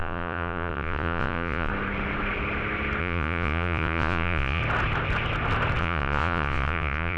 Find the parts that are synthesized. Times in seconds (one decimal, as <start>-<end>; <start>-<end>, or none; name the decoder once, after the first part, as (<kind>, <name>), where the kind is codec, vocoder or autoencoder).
0.0-1.7 (vocoder, Vocos); 3.0-4.6; 5.8-7.2